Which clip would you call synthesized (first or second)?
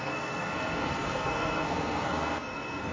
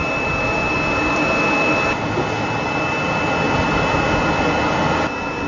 first